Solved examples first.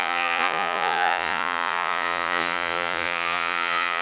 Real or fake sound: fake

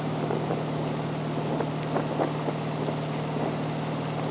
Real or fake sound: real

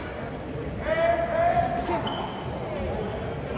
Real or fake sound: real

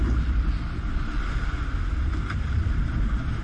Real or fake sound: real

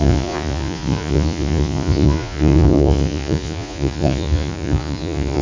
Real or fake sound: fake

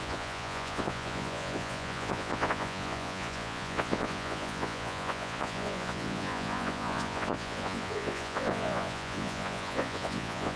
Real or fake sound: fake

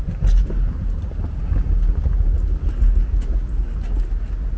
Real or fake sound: real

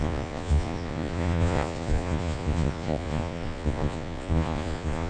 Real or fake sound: fake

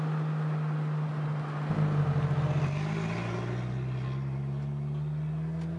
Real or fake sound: real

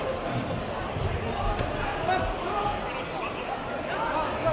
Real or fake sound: real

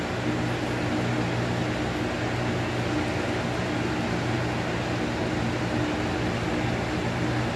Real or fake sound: real